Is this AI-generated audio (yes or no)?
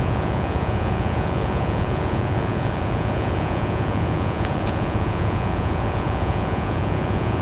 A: yes